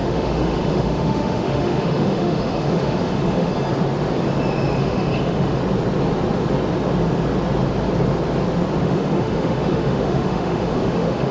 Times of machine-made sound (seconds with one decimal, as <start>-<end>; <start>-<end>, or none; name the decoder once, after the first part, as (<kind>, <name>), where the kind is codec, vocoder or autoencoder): 0.0-3.5 (autoencoder, DAC-VAE); 4.8-5.6; 8.8-11.3